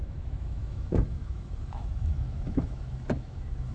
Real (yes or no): no